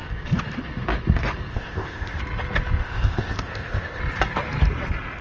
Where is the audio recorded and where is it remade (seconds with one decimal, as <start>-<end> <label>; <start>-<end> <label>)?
0.0-1.5 recorded; 1.5-2.2 remade; 2.2-2.8 recorded; 2.8-4.0 remade; 4.0-5.2 recorded